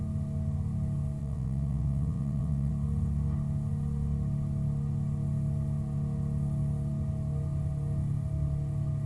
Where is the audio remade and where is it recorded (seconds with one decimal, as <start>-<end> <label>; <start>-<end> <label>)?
0.0-1.2 recorded; 1.2-2.7 remade; 2.7-9.1 recorded